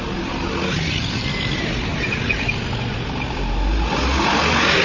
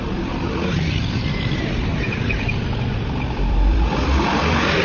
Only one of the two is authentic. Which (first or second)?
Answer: first